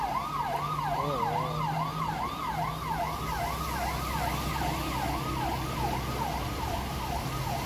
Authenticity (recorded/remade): recorded